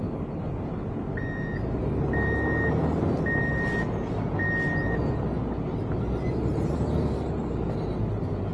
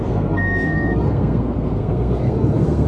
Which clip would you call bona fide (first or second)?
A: first